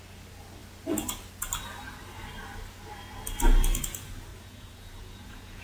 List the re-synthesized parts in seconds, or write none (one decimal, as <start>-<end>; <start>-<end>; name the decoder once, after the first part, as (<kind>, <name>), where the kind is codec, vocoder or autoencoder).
4.3-5.6 (vocoder, Vocos)